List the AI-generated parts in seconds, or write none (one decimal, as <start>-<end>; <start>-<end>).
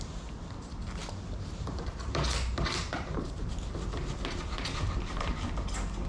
1.0-3.5